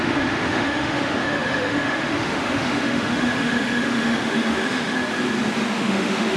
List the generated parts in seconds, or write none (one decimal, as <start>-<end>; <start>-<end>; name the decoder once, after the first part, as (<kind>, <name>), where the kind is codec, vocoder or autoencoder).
0.0-5.0 (autoencoder, DAC-VAE); 5.7-6.4